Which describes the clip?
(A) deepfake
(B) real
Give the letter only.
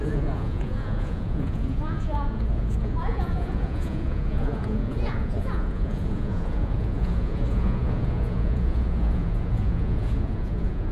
A